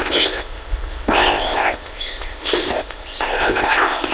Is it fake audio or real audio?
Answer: fake